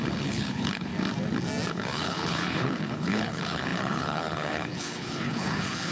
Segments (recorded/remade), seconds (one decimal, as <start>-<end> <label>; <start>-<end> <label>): 0.0-0.9 remade; 0.9-1.7 recorded; 1.7-5.9 remade